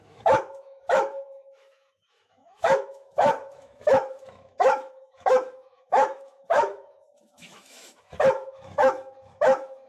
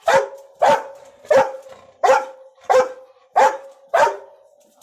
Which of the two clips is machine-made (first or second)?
first